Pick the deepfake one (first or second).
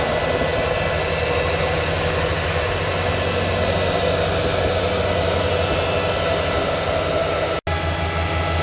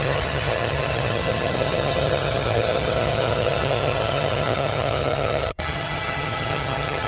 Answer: second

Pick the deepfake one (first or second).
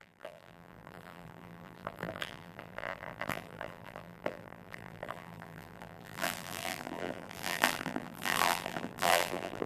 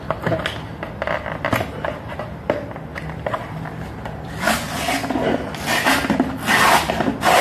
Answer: first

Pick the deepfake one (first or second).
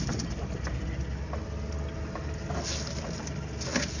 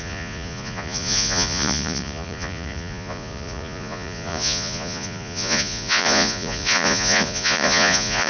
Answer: second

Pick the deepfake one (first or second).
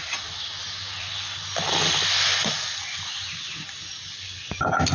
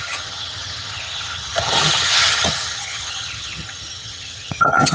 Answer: second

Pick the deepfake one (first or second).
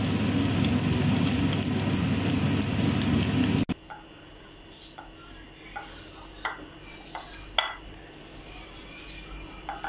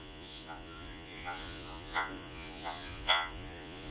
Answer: second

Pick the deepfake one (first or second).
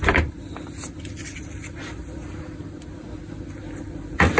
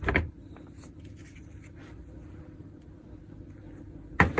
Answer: first